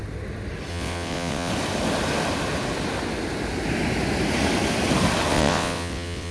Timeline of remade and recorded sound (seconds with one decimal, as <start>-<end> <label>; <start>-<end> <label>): 0.0-0.7 recorded; 0.7-1.5 remade; 1.5-5.3 recorded; 5.3-6.3 remade